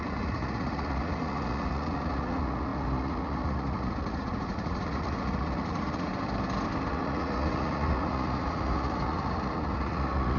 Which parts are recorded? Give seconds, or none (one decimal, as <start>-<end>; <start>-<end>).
6.1-6.9